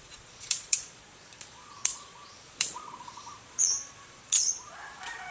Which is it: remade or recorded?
remade